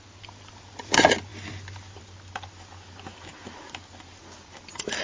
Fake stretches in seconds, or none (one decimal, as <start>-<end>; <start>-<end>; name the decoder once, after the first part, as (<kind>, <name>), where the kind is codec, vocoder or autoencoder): none